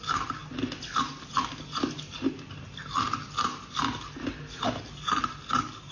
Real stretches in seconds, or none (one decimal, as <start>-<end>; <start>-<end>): 0.0-5.9